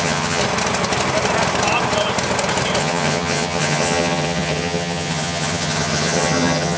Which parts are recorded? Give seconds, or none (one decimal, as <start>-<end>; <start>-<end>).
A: 0.4-2.8